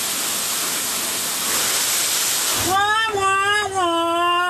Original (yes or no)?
yes